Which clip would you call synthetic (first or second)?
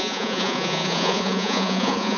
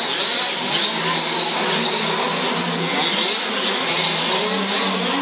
first